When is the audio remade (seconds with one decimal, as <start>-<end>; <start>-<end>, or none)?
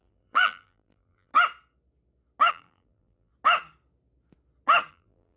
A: 0.0-1.3; 2.5-3.3; 4.9-5.4